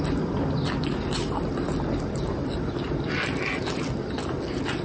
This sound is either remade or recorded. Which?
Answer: recorded